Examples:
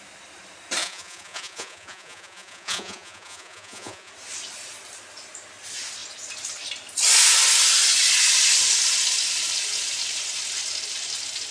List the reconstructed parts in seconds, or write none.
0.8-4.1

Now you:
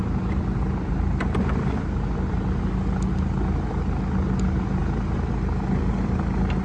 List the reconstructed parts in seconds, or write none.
none

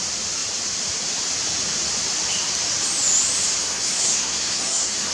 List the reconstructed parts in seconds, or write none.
3.6-5.1

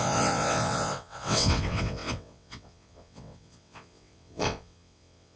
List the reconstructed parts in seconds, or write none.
0.0-5.4